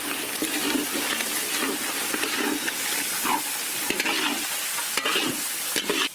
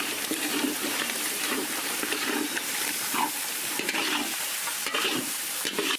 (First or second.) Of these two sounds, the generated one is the second